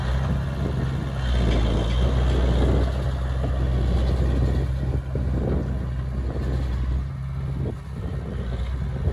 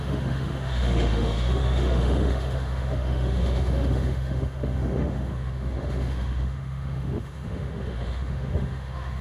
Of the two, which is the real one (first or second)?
first